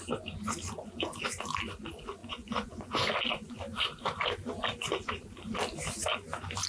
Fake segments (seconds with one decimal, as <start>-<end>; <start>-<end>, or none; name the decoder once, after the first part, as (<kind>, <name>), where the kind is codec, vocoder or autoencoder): 2.2-2.9 (vocoder, Vocos)